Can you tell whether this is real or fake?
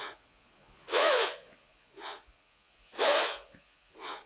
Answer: fake